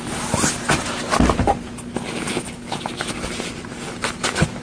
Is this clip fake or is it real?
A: real